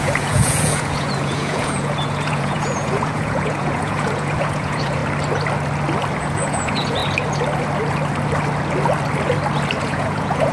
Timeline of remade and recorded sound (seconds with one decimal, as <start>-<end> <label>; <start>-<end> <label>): 0.0-5.0 remade; 5.0-6.2 recorded; 6.2-7.0 remade; 7.0-9.8 recorded; 9.8-10.5 remade